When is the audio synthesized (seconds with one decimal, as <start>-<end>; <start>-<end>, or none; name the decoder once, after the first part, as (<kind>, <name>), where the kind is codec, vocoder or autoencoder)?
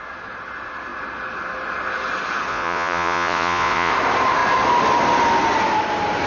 2.5-3.9 (vocoder, Vocos)